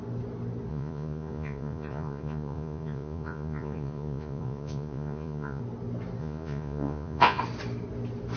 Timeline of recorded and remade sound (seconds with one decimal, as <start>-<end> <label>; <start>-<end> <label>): 0.0-0.7 recorded; 0.7-5.6 remade; 5.6-6.2 recorded; 6.2-7.4 remade; 7.4-8.4 recorded